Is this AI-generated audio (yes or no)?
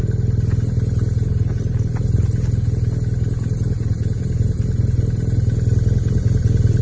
no